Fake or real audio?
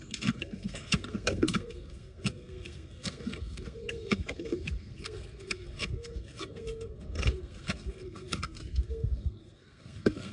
fake